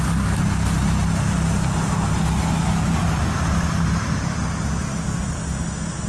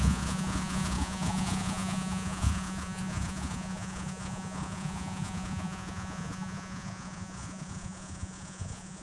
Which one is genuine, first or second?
first